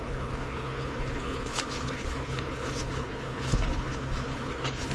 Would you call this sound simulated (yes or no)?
yes